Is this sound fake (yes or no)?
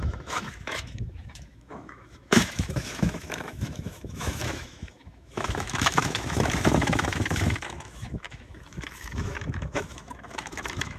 yes